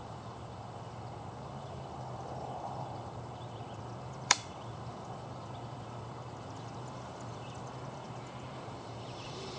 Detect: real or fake fake